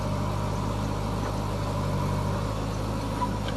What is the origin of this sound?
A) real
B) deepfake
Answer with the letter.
A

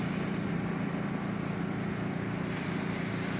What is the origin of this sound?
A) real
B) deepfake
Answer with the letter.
A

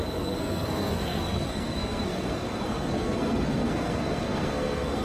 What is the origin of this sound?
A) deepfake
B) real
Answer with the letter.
A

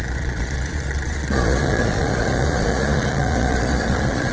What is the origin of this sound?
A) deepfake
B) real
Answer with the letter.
A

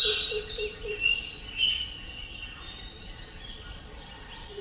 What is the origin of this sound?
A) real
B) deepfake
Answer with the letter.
A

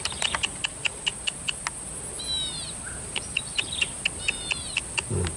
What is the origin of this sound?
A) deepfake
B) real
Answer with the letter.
B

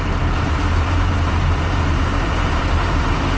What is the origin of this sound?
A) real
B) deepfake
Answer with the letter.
B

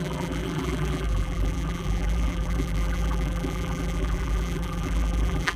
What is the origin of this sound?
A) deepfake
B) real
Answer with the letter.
A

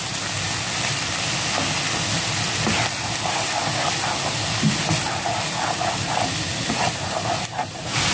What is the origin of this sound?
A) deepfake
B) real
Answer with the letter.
B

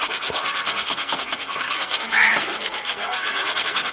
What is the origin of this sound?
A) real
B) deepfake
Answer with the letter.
B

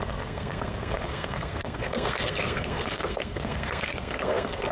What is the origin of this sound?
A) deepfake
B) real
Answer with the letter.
A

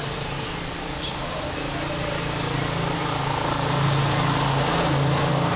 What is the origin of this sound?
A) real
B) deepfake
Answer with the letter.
A